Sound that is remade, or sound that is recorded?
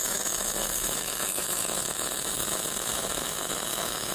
remade